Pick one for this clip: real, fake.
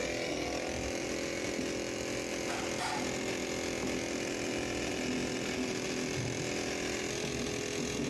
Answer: real